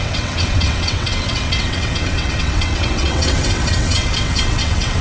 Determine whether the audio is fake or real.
fake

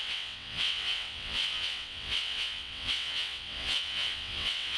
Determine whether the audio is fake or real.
fake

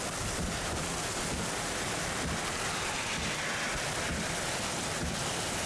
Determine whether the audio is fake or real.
real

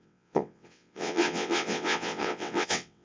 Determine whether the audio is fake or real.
fake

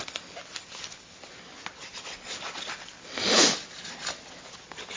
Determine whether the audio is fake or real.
real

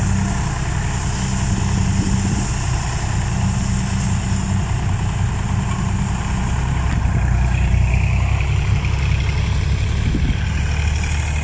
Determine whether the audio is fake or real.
real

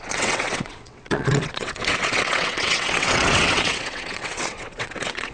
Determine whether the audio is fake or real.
fake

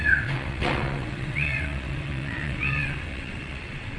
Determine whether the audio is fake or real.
fake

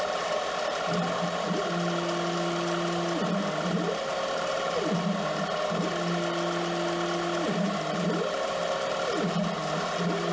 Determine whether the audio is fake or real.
real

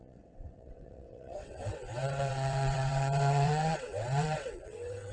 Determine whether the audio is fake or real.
fake